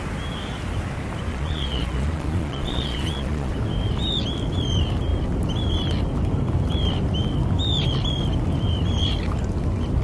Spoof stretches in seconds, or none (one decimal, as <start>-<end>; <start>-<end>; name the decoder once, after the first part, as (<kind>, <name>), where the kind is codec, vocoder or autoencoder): 1.3-3.5 (vocoder, Vocos)